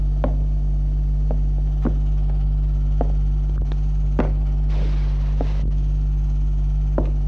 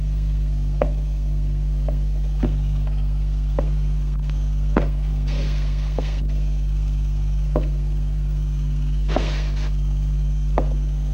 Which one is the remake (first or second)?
second